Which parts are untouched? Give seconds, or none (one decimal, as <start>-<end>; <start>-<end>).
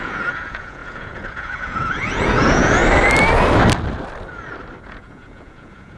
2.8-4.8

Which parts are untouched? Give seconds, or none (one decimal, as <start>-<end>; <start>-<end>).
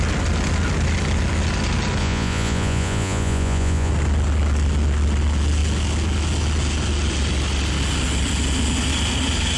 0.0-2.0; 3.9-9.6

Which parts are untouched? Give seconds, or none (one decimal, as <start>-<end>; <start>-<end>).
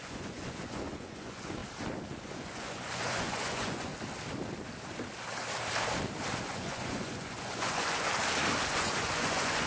1.6-2.2; 3.9-6.4; 8.1-8.6